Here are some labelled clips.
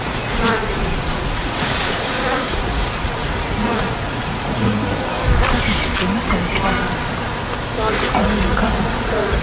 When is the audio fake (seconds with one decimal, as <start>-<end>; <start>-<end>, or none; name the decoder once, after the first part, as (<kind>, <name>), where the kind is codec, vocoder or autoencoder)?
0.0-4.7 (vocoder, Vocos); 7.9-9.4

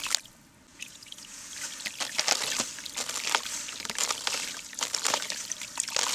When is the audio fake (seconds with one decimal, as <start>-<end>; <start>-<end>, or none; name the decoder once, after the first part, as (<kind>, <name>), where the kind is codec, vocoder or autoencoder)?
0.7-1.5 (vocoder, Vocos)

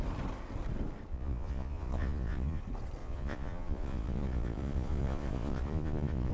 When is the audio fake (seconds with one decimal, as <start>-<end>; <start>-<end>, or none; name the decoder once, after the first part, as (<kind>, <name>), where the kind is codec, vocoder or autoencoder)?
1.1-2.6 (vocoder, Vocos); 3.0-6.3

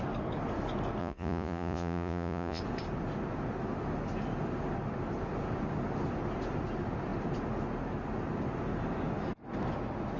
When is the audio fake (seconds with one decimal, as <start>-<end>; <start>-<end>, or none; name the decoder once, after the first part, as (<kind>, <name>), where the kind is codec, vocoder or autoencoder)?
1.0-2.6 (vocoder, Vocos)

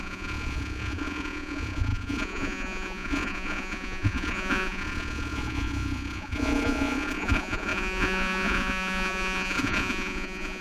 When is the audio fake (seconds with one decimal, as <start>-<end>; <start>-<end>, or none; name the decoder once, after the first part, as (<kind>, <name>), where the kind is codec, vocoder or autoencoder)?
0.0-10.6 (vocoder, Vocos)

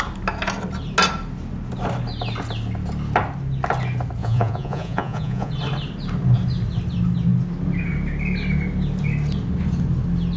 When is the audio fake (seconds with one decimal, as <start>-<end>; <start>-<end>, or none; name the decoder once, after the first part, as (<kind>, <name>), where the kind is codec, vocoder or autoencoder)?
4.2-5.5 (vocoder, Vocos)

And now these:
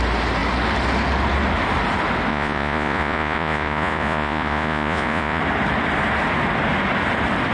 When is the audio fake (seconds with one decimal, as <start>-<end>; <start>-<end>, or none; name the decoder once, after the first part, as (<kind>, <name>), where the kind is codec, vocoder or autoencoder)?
2.3-5.4 (vocoder, Vocos)

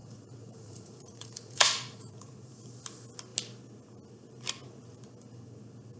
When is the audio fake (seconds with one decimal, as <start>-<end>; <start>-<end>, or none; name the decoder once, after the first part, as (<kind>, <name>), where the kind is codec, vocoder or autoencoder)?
0.0-2.6 (vocoder, Vocos)